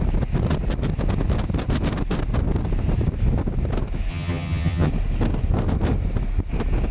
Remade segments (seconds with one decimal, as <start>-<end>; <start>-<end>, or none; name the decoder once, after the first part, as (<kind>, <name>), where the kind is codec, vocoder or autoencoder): 4.1-4.9 (vocoder, HiFi-GAN)